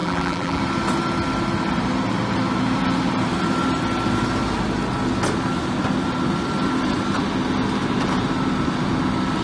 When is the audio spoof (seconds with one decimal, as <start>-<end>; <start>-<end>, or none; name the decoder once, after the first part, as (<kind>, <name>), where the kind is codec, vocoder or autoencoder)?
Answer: 0.0-0.6 (vocoder, BigVGAN v2)